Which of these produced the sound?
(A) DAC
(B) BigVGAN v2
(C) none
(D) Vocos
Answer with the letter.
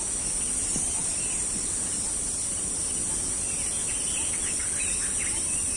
B